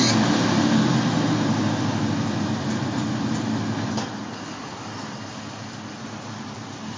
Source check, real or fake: real